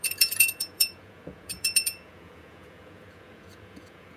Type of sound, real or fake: fake